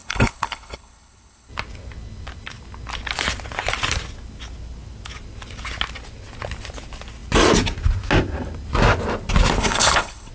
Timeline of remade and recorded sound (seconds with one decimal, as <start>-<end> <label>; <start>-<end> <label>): 0.0-1.5 remade; 1.5-9.6 recorded; 9.6-10.3 remade